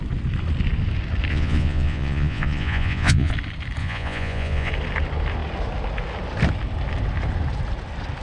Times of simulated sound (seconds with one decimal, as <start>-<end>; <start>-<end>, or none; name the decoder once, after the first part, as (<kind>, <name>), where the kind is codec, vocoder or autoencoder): 1.3-3.3 (vocoder, Vocos); 3.8-4.7